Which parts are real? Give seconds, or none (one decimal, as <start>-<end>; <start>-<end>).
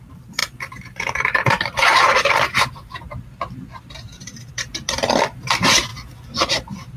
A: 5.9-6.5